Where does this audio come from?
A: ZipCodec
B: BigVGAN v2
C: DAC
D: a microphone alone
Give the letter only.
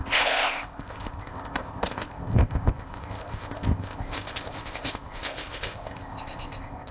A